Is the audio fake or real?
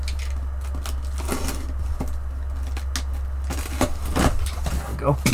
real